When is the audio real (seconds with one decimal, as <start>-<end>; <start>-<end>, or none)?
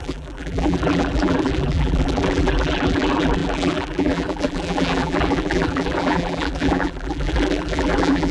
none